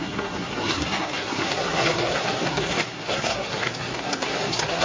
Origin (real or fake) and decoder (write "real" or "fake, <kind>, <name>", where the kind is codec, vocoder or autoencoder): fake, codec, SNAC